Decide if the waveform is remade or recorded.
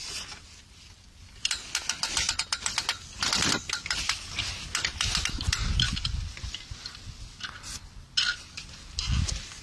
recorded